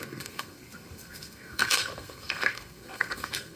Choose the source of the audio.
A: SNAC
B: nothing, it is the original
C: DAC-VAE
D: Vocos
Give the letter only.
A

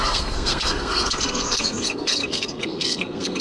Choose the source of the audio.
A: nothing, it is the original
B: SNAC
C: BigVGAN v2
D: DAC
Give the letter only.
B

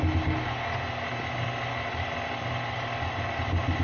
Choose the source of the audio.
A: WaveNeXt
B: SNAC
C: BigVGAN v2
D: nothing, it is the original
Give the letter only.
D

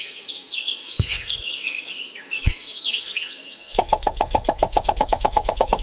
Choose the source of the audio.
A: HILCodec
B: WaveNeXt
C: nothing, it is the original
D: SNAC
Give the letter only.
D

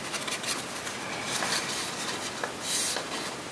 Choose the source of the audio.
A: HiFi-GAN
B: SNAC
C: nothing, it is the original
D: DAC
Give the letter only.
C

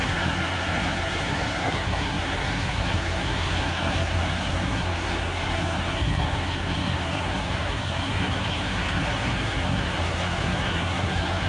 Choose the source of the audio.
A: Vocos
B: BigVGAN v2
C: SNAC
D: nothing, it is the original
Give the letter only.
C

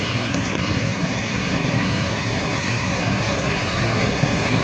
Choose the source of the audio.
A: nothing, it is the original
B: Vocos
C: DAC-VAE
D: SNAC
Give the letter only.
D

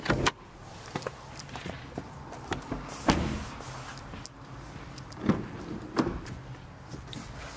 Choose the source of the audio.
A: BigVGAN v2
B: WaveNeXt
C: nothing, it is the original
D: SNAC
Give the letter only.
C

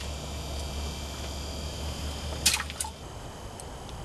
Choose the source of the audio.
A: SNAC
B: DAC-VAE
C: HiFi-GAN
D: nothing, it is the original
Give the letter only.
D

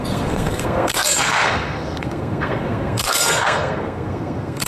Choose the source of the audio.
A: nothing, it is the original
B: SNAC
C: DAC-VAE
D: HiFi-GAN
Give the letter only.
B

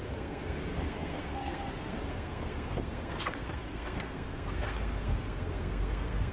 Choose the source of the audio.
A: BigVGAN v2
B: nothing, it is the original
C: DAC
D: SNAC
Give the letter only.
D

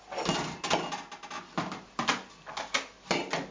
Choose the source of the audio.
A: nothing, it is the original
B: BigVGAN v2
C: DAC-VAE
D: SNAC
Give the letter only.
A